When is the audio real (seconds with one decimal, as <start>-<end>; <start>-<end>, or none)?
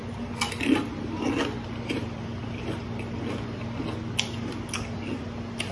0.0-2.0; 2.8-5.7